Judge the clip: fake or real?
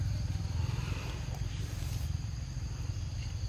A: real